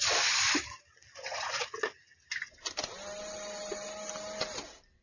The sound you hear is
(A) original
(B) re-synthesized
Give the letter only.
A